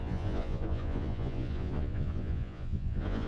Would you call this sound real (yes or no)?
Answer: no